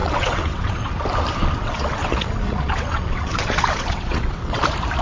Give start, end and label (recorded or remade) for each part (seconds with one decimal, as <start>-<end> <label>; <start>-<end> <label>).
0.0-0.9 remade; 0.9-1.6 recorded; 1.6-4.6 remade; 4.6-5.0 recorded